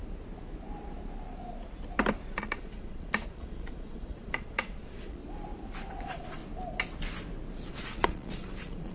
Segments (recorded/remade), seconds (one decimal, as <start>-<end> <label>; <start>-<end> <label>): 0.0-2.3 recorded; 2.3-5.2 remade; 5.2-5.9 recorded; 5.9-6.4 remade; 6.4-7.7 recorded; 7.7-8.9 remade